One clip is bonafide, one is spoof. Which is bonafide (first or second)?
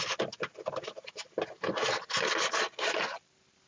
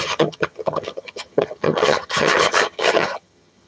first